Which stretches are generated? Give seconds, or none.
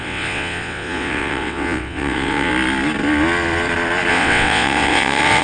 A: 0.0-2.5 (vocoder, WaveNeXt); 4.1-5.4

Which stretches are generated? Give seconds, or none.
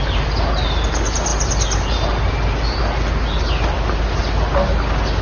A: none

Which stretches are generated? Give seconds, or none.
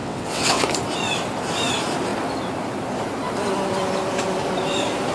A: 0.0-0.6 (vocoder, WaveNeXt)